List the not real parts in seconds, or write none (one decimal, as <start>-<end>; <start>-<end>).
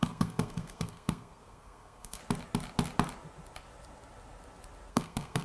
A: 0.0-2.2; 4.9-5.4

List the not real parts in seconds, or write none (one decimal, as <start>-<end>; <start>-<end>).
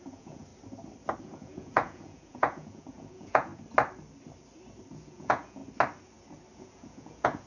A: 0.0-0.5; 1.2-3.5; 4.9-5.6; 6.6-7.5